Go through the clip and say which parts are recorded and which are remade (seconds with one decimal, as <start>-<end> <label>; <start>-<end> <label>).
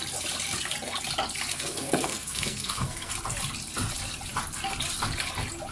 0.0-1.5 recorded; 1.5-3.1 remade; 3.1-5.7 recorded